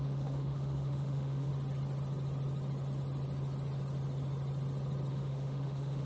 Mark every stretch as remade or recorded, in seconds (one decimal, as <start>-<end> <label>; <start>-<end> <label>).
0.0-1.5 remade; 1.5-5.1 recorded; 5.1-6.0 remade